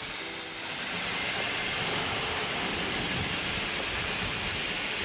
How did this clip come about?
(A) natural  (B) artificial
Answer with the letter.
A